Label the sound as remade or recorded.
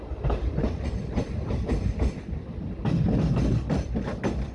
recorded